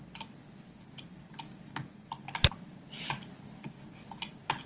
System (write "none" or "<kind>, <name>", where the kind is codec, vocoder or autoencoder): none